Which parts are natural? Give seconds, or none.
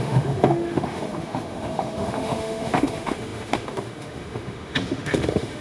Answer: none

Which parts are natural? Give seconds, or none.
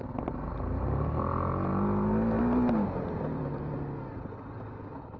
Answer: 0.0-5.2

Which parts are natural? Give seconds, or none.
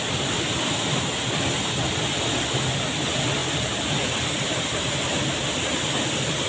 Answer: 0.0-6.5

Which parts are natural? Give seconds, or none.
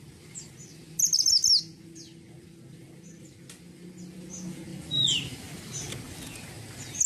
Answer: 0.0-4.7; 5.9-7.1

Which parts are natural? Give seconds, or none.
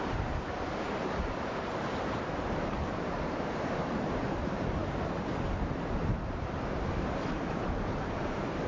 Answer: none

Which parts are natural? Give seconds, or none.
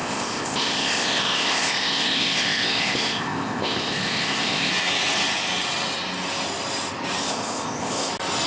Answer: 4.7-7.2; 8.1-8.5